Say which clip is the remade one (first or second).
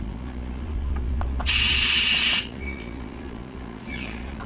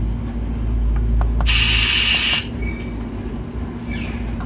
first